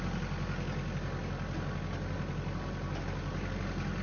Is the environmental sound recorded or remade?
recorded